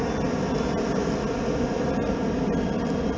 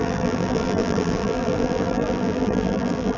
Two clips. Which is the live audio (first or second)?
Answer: first